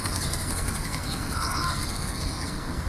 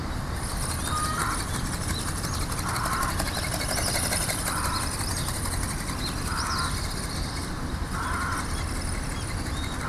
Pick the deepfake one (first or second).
first